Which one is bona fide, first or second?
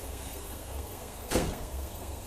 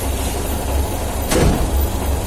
second